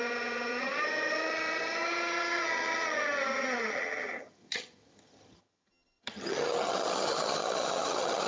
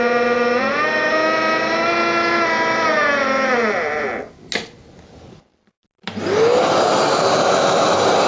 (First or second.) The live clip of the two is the second